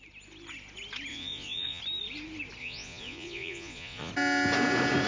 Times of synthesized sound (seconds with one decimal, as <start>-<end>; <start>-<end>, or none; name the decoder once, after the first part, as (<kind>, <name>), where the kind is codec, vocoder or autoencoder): 1.1-1.8 (vocoder, Vocos); 2.6-4.1